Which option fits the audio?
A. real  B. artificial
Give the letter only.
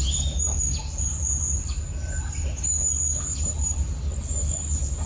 A